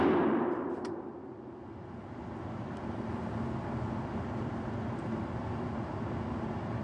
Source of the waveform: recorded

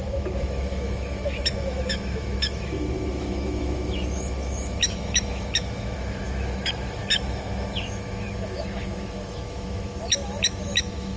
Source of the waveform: remade